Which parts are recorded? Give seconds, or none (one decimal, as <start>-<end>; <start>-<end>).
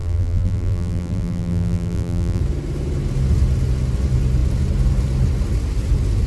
2.4-6.3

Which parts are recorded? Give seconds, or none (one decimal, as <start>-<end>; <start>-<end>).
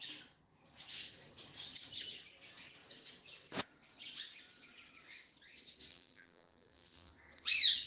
0.0-5.9; 7.1-7.9